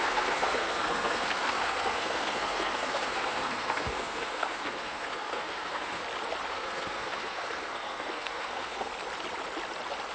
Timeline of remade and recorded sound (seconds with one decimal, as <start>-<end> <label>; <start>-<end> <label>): 0.0-6.0 remade; 6.0-6.5 recorded; 6.5-8.9 remade; 8.9-10.1 recorded